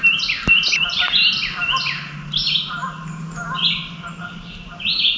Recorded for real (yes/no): yes